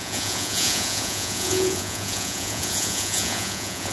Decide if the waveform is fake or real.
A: fake